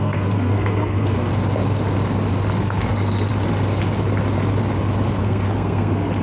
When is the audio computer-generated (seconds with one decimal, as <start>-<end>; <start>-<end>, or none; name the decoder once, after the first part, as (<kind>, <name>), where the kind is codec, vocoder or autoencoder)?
0.0-1.3 (codec, SNAC); 2.6-3.3; 5.2-6.2